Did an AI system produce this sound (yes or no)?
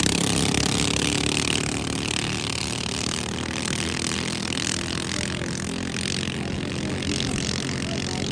no